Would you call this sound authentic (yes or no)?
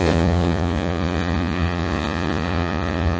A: no